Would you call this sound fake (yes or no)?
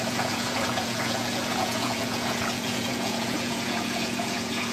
yes